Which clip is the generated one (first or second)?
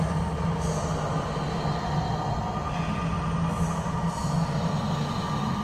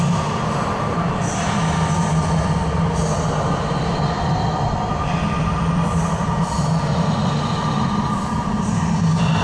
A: second